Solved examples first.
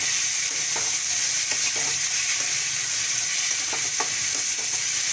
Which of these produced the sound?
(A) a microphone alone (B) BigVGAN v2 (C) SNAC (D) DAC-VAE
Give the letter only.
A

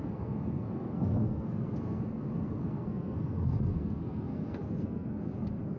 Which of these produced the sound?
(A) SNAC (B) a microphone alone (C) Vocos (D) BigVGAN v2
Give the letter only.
A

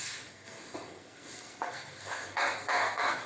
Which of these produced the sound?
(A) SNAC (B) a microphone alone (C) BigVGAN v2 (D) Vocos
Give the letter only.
A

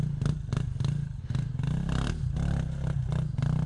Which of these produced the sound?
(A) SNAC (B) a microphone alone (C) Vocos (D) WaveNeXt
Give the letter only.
B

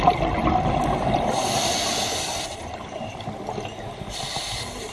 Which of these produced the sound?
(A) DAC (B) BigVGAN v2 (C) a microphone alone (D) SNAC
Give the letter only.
C